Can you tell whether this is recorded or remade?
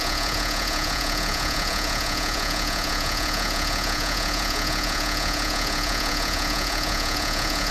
remade